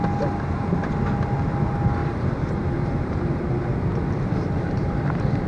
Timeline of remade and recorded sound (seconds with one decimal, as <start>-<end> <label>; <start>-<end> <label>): 0.0-2.0 recorded; 2.0-3.4 remade; 3.4-5.5 recorded